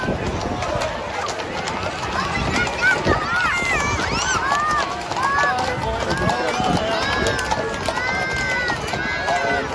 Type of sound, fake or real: real